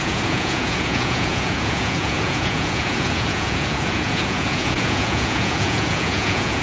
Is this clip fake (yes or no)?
yes